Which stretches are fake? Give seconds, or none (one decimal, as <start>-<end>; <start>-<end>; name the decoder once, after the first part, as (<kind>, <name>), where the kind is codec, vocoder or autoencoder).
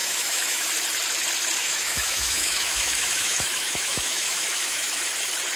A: 0.0-0.7 (autoencoder, DAC-VAE); 1.6-5.0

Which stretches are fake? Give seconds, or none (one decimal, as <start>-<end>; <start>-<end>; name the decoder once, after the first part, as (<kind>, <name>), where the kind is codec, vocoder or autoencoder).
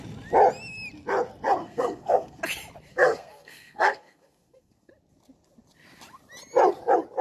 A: 1.6-2.4 (codec, SNAC); 2.9-4.9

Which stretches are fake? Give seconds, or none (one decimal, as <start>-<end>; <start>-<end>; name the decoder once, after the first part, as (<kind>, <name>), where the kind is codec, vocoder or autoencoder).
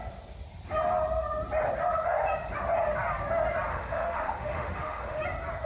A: 3.7-5.2 (autoencoder, DAC-VAE)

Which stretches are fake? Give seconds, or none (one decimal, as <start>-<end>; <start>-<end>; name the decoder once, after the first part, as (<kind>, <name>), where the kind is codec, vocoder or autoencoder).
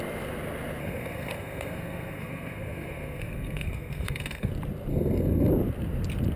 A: 0.8-4.5 (codec, SNAC); 4.9-5.5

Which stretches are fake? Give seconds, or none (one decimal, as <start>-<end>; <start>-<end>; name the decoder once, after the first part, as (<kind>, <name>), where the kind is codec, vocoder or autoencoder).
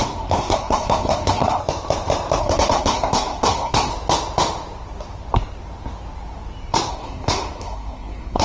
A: 0.0-1.6 (codec, SNAC); 2.4-3.9; 6.9-8.4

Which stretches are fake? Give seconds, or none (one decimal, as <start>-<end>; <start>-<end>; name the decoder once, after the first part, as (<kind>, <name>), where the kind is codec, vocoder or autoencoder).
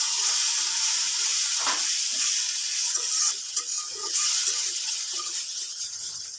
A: 2.8-3.6 (vocoder, HiFi-GAN); 4.0-6.4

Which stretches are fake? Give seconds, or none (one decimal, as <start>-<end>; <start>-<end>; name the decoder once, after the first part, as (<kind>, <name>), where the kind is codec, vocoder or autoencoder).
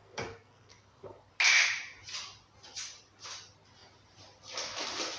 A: 0.0-1.3 (codec, SNAC)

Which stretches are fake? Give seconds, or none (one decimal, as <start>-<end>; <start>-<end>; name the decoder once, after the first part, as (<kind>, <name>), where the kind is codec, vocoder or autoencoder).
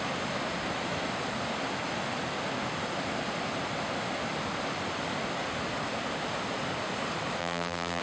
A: 7.4-8.0 (vocoder, BigVGAN v2)